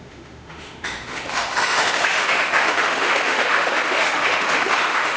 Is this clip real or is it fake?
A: fake